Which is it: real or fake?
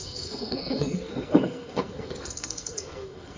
fake